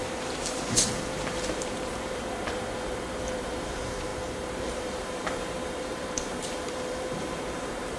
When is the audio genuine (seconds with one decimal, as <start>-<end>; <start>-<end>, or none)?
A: none